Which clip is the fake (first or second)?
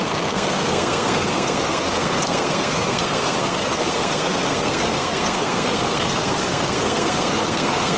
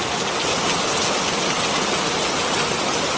first